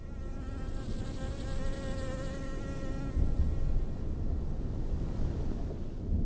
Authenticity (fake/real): real